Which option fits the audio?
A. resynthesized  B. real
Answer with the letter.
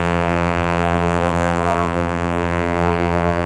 A